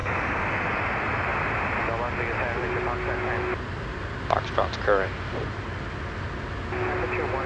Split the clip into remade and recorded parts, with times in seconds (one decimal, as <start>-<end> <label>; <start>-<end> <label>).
0.0-7.5 recorded